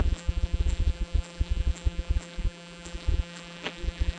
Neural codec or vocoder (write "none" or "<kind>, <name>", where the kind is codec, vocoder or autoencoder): vocoder, BigVGAN v2